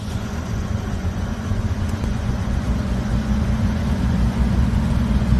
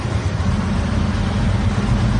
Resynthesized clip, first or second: first